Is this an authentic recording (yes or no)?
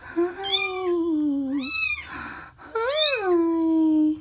yes